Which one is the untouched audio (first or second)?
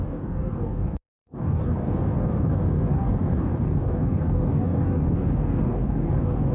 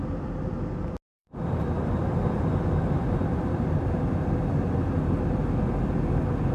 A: second